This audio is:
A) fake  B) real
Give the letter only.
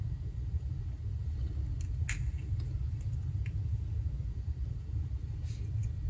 B